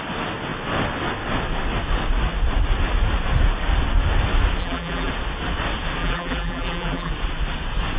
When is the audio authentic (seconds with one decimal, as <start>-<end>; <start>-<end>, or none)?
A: 0.0-4.6; 5.1-6.0; 7.1-8.0